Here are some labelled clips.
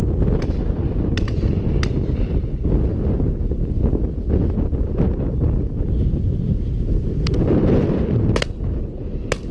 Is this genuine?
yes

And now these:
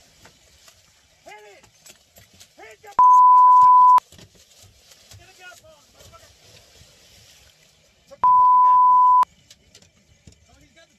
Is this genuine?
yes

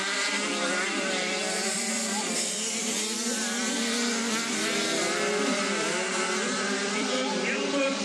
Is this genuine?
no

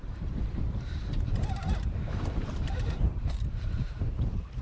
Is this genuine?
no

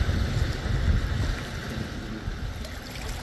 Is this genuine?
yes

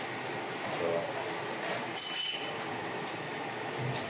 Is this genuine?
yes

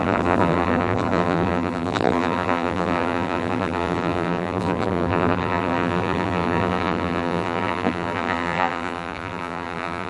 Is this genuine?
no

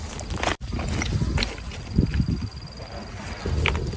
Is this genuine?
yes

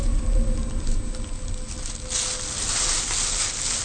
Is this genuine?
yes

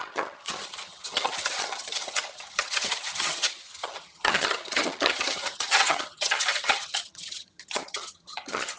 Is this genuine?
no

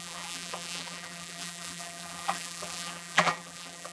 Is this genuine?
no